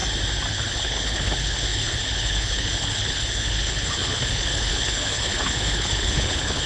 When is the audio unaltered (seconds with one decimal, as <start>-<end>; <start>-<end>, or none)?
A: 0.0-0.5